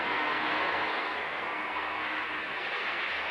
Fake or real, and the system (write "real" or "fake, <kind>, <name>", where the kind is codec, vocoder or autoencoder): fake, codec, SNAC